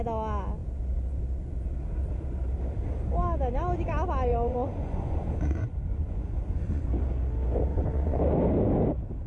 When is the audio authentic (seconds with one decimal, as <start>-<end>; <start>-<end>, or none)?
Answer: 0.0-4.3; 6.8-7.7; 8.2-9.3